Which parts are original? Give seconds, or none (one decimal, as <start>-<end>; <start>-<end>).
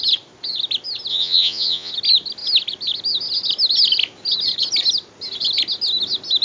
0.0-1.1; 1.9-6.4